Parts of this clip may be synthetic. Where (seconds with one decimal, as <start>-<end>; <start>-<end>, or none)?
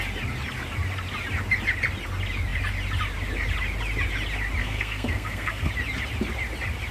4.6-5.7